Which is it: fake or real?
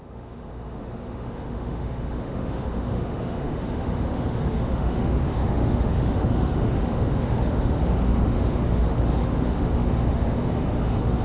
fake